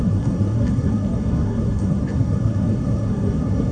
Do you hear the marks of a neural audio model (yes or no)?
yes